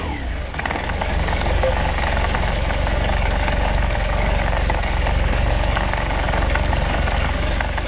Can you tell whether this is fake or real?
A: fake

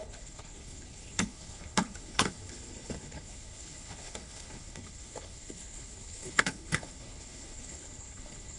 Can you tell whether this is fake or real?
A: fake